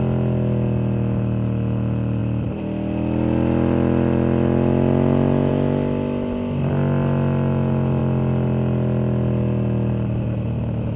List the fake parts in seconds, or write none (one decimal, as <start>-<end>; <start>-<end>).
none